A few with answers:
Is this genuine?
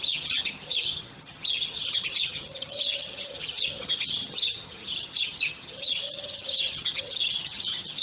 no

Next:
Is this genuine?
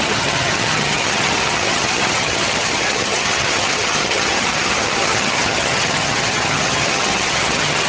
no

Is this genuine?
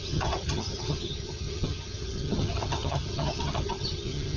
no